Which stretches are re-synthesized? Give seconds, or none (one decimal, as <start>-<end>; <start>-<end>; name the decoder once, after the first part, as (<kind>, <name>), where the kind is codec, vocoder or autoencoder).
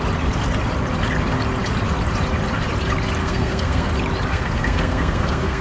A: 3.2-3.9 (codec, SNAC); 4.3-5.6